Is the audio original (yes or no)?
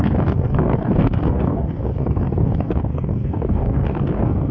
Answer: no